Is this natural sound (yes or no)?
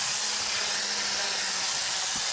yes